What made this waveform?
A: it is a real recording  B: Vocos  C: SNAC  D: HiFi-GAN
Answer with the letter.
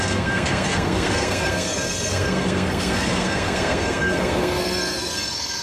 C